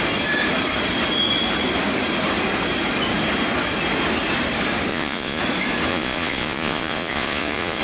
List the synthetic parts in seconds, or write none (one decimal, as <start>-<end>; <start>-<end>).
4.9-5.4; 5.9-7.8